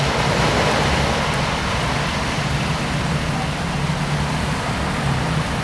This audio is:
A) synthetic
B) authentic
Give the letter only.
B